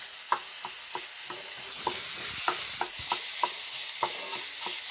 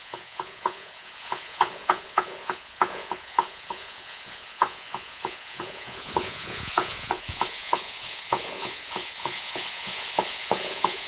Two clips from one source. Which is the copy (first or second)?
second